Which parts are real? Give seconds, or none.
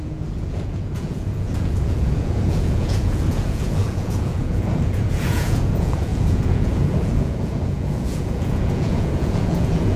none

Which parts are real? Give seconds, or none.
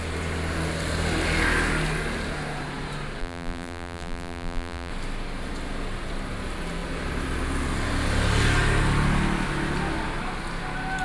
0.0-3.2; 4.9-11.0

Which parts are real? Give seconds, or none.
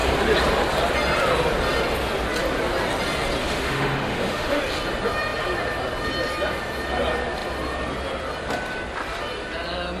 0.0-3.4; 4.6-10.0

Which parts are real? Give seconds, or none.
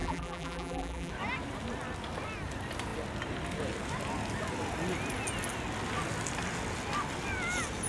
1.1-7.9